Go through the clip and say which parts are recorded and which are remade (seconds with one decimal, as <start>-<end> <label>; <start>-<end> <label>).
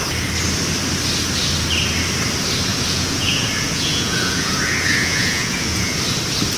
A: 0.0-2.7 recorded; 2.7-6.0 remade; 6.0-6.6 recorded